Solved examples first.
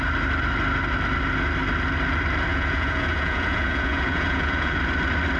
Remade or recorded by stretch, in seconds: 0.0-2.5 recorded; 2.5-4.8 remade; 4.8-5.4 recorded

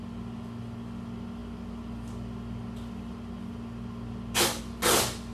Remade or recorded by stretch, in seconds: 0.0-5.3 recorded

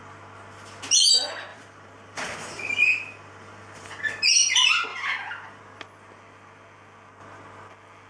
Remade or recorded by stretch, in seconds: 0.0-1.5 recorded; 1.5-4.0 remade; 4.0-4.9 recorded; 4.9-5.6 remade; 5.6-8.1 recorded

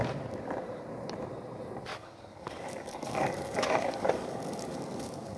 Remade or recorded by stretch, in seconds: 0.0-1.9 recorded; 1.9-5.4 remade

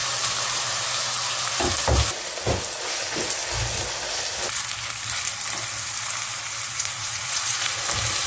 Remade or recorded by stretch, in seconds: 0.0-6.7 recorded; 6.7-7.8 remade; 7.8-8.3 recorded

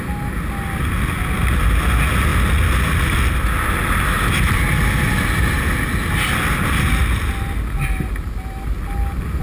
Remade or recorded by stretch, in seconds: 0.0-9.4 recorded

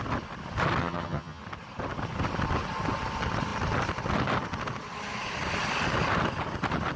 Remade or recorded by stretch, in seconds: 0.0-0.8 recorded; 0.8-1.4 remade; 1.4-7.0 recorded